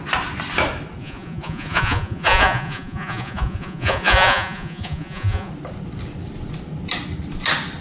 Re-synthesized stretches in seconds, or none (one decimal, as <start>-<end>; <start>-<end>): 1.0-5.5